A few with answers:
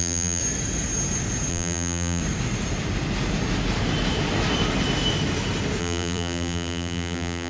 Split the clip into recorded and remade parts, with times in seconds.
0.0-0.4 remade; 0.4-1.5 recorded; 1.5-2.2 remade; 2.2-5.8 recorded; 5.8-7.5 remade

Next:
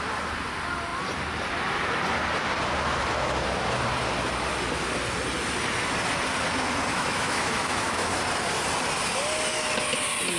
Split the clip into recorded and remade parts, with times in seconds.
0.0-6.9 recorded; 6.9-8.2 remade; 8.2-10.4 recorded

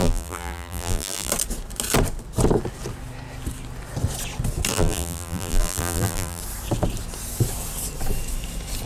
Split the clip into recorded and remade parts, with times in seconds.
0.0-1.3 remade; 1.3-4.7 recorded; 4.7-6.4 remade; 6.4-8.9 recorded

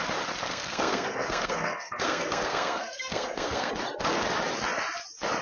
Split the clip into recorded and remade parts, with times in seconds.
0.0-0.5 recorded; 0.5-3.7 remade; 3.7-5.4 recorded

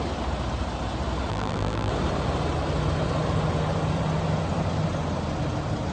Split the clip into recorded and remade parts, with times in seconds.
0.0-1.3 recorded; 1.3-1.9 remade; 1.9-5.9 recorded